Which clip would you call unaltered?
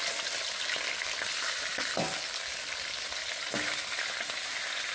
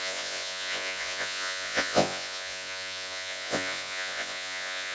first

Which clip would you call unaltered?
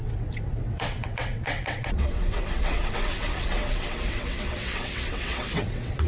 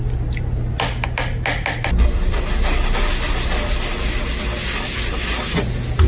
second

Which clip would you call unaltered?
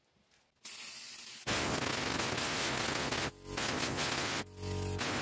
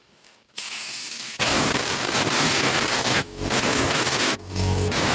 first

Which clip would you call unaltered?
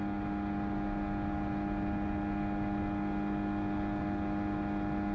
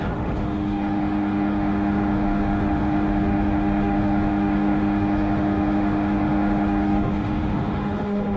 first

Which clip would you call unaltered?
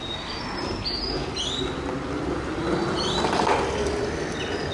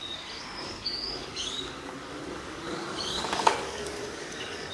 first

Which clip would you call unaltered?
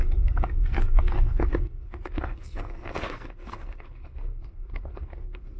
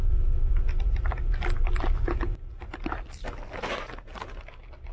second